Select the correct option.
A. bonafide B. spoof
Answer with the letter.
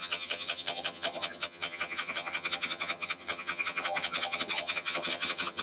B